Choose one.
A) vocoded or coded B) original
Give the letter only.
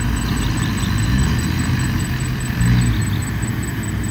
B